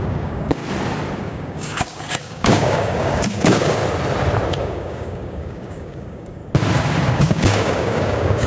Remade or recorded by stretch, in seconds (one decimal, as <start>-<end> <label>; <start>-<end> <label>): 0.0-0.6 remade; 0.6-1.2 recorded; 1.2-3.8 remade; 3.8-4.6 recorded; 4.6-6.4 remade; 6.4-7.1 recorded; 7.1-8.5 remade